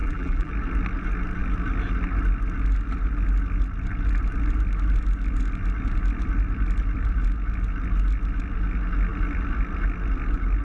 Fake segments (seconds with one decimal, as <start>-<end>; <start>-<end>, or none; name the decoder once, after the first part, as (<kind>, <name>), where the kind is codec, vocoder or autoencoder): 0.0-0.5 (vocoder, BigVGAN v2)